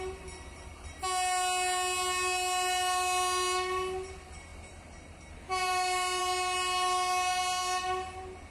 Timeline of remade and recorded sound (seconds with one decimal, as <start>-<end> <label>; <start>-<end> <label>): 0.0-8.5 recorded